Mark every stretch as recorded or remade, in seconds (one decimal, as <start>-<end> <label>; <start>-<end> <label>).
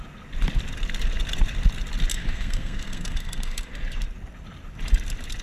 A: 0.0-2.1 recorded; 2.1-3.7 remade; 3.7-5.4 recorded